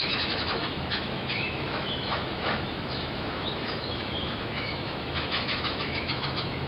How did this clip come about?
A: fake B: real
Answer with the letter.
A